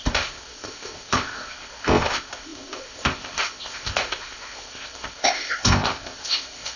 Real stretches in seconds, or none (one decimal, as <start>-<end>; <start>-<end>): none